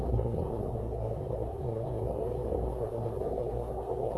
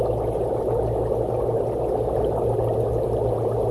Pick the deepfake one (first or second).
first